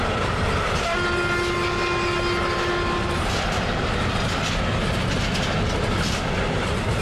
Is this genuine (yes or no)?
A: yes